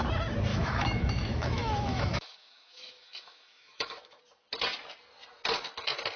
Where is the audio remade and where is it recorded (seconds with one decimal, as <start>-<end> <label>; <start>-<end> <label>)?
0.0-0.5 recorded; 0.5-4.2 remade; 4.2-6.2 recorded